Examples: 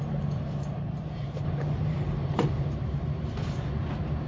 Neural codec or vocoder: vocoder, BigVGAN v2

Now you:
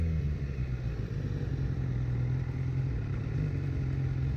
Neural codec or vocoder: none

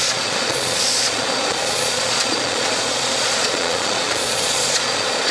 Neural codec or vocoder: vocoder, Vocos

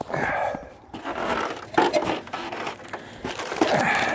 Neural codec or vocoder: none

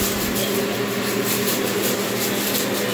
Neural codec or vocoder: none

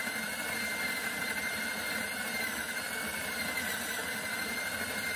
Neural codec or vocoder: none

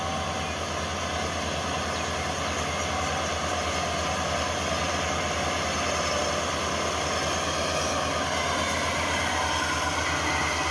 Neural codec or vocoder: none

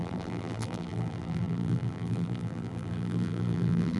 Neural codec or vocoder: vocoder, BigVGAN v2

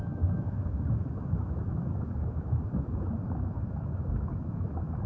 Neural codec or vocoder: autoencoder, DAC-VAE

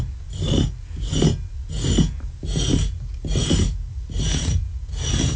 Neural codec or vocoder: none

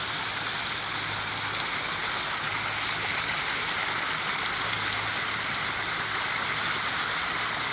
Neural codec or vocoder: none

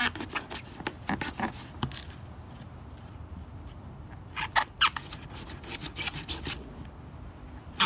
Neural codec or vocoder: none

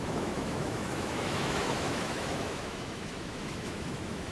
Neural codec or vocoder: autoencoder, DAC-VAE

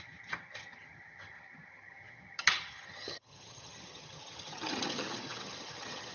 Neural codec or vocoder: vocoder, HiFi-GAN